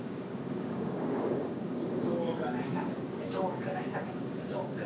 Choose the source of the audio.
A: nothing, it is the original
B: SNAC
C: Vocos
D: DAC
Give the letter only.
D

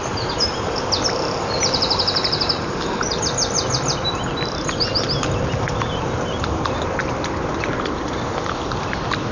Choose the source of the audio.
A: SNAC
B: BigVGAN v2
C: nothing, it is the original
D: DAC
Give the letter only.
C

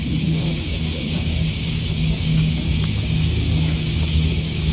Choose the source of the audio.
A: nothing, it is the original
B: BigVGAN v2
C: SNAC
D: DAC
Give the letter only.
D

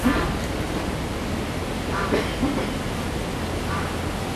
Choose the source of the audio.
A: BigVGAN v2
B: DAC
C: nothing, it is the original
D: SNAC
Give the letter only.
C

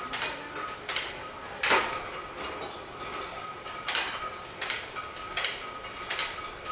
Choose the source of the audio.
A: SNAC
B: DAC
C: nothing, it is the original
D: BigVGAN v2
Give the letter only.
C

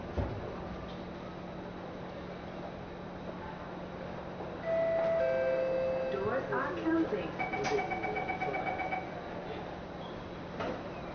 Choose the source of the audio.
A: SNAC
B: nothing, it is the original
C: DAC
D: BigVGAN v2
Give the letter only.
B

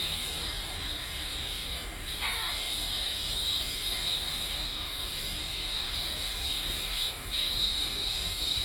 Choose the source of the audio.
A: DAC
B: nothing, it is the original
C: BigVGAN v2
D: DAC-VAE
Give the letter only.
A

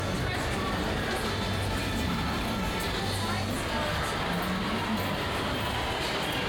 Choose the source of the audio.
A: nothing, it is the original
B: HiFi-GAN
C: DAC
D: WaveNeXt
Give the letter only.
A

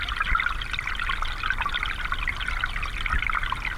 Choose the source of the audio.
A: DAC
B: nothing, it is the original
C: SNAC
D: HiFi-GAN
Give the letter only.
B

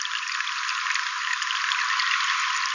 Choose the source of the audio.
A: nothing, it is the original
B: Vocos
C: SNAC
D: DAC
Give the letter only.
A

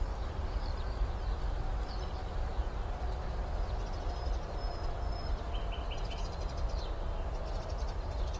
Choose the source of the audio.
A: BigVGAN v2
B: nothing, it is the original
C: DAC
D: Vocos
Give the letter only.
B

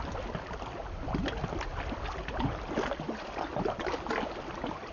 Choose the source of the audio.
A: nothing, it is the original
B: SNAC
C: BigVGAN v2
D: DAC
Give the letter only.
A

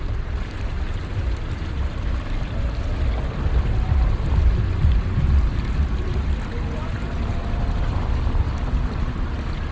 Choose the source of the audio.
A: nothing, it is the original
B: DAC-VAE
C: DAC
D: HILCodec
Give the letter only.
A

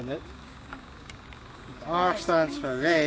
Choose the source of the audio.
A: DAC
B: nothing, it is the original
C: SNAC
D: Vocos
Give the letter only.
A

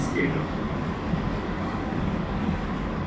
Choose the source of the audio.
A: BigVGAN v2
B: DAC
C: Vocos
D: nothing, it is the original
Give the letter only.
B